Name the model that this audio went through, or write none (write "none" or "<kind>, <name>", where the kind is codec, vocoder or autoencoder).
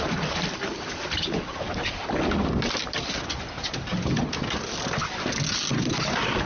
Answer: none